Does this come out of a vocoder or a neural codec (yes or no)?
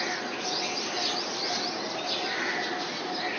no